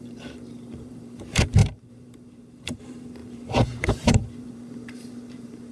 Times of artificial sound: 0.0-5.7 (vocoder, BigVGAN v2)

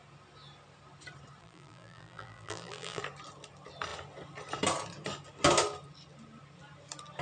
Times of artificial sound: 1.4-3.0 (vocoder, BigVGAN v2)

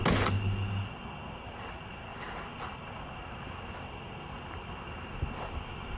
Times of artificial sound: none

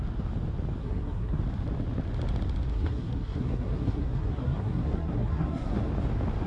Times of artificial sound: 0.8-1.4 (codec, SNAC); 2.7-5.9

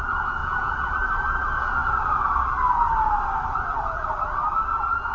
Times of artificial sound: 0.4-0.9 (vocoder, Vocos)

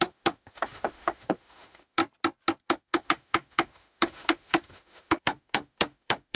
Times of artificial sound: 0.0-2.0 (autoencoder, DAC-VAE); 2.6-6.3